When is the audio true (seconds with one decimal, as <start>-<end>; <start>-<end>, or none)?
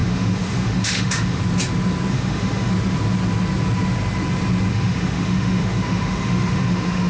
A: 1.4-2.1; 2.7-4.7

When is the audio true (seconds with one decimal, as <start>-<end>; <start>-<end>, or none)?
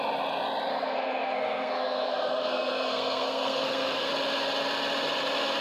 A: 0.0-0.7; 4.1-5.6